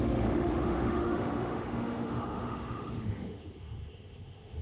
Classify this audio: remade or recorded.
remade